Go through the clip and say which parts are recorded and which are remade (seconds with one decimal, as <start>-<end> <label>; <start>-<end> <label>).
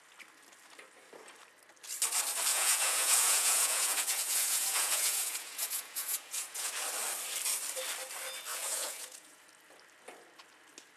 0.0-2.5 recorded; 2.5-6.7 remade; 6.7-8.5 recorded; 8.5-9.4 remade; 9.4-11.0 recorded